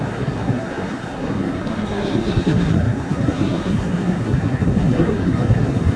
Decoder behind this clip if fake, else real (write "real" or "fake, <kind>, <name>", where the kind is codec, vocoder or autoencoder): fake, codec, SNAC